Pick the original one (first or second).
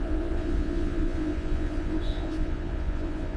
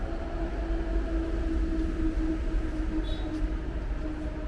second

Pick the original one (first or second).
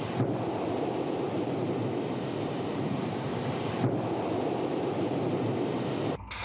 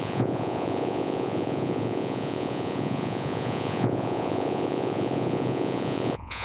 first